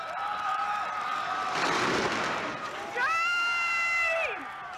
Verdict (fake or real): fake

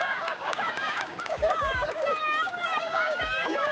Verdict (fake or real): fake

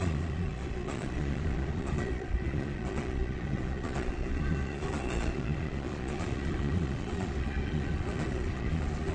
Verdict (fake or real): fake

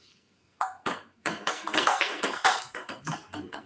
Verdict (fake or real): fake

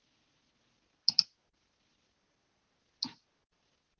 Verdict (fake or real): real